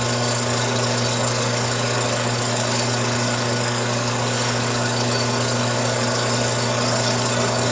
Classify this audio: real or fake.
fake